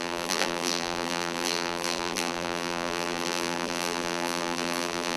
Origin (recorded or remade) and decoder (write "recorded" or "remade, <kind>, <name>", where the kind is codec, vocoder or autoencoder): remade, vocoder, BigVGAN v2